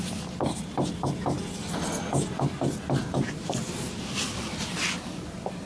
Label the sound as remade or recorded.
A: recorded